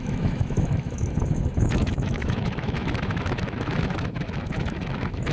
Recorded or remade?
remade